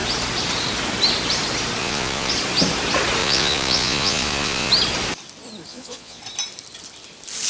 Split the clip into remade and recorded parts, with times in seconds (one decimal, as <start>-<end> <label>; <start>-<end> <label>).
0.0-1.8 recorded; 1.8-2.3 remade; 2.3-3.2 recorded; 3.2-4.7 remade; 4.7-5.7 recorded; 5.7-6.2 remade; 6.2-7.5 recorded